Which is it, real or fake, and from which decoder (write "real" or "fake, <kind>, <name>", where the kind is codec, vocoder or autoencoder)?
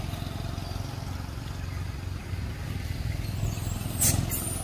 real